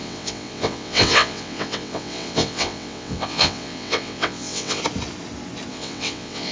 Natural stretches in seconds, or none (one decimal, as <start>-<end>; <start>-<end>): 4.8-5.7

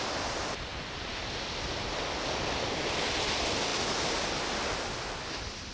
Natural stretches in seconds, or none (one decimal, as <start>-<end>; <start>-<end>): 0.0-5.7

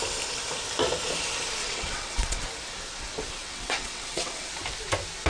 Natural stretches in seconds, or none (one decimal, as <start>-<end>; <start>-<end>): 0.0-1.6; 2.4-3.4; 4.5-5.3

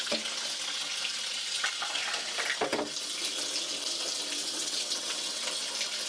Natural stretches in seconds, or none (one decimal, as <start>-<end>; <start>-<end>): 0.0-4.4; 5.4-6.1

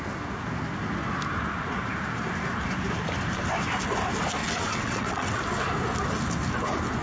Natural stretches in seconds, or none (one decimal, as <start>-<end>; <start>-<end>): 0.0-4.4; 5.4-7.0

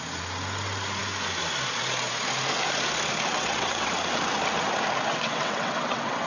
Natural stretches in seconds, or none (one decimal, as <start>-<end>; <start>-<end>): 0.0-3.3; 3.9-5.1

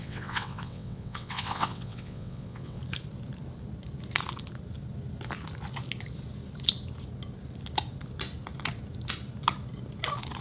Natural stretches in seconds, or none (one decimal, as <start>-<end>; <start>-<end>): 2.8-10.4